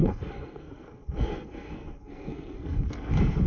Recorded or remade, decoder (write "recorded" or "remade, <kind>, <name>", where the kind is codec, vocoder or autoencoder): remade, codec, SNAC